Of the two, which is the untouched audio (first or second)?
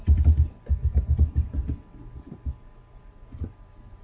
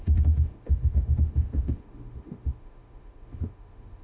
first